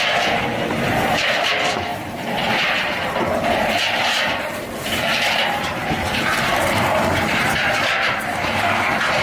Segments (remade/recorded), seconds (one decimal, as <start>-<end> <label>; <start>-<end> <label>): 0.0-9.2 remade